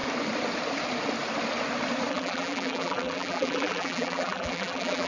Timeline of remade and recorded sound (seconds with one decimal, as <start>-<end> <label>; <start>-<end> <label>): 0.0-2.1 recorded; 2.1-5.1 remade